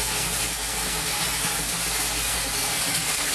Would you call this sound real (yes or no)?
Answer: no